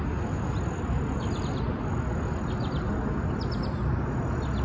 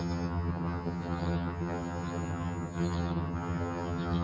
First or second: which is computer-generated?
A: second